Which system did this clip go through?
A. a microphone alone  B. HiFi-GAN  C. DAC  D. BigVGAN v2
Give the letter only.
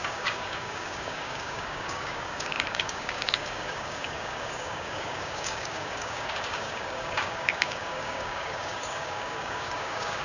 C